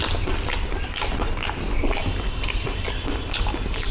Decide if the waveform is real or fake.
real